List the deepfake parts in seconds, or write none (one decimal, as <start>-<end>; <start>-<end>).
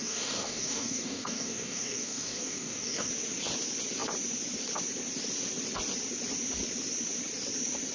0.0-3.1